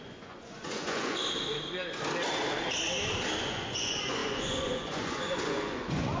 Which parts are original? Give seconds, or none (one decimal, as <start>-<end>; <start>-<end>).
1.2-3.4